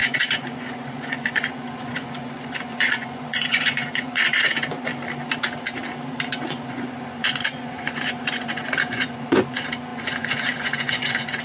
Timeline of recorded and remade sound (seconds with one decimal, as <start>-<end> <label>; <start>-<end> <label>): 0.0-4.9 remade; 4.9-6.5 recorded; 6.5-11.4 remade